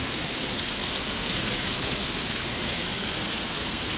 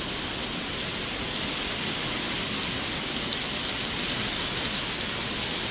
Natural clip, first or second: second